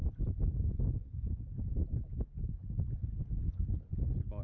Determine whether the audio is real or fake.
real